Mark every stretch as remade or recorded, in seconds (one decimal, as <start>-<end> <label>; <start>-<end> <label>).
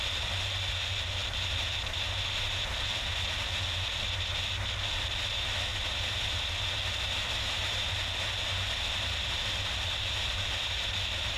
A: 0.0-11.4 recorded